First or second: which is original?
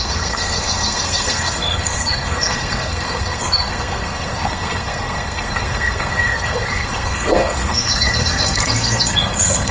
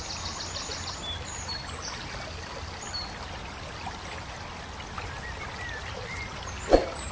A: second